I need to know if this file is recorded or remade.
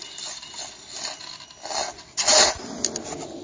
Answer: recorded